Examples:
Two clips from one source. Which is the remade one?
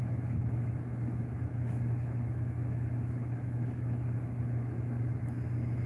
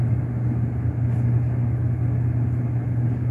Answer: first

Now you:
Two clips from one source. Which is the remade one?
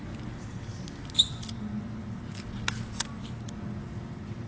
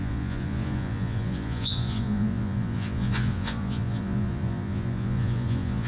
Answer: second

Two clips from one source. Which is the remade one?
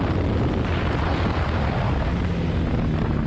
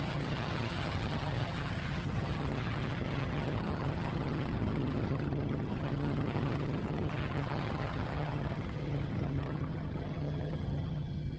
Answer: second